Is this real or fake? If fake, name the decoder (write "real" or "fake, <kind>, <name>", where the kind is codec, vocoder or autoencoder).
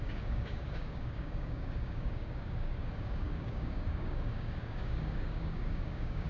fake, codec, DAC